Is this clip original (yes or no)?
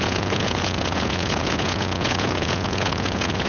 no